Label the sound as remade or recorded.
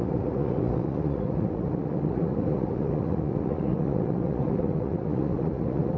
remade